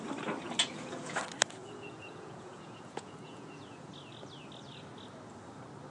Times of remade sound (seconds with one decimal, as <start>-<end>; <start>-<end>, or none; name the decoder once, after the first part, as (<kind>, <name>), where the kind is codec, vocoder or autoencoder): 0.6-1.2 (vocoder, Vocos); 1.6-3.9